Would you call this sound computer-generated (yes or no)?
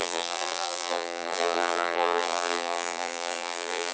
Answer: yes